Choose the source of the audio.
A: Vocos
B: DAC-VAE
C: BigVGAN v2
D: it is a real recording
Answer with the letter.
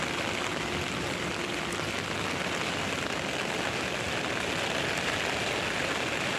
D